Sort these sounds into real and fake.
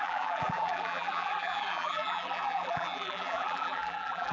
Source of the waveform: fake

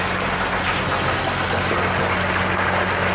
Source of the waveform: real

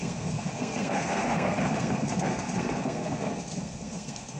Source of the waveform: fake